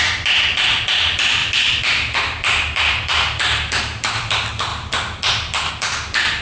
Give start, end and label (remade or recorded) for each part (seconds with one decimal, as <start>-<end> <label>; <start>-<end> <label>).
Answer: 0.0-1.4 recorded; 1.4-4.3 remade; 4.3-6.4 recorded